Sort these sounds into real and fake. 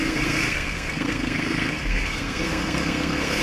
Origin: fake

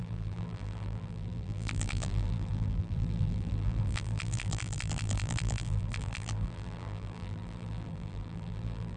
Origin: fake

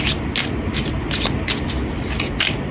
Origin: real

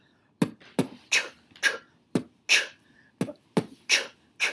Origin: real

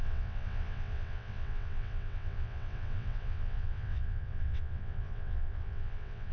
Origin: fake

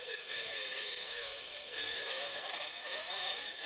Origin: fake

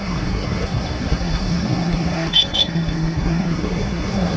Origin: fake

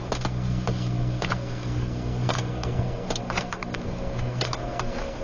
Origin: fake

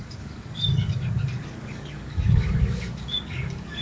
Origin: fake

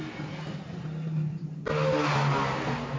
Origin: real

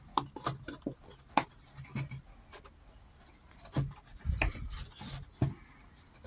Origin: real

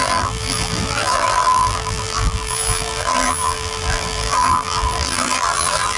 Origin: fake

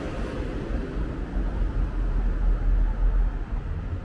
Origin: real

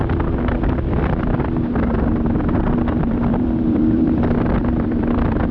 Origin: fake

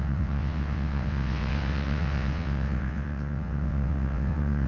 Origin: fake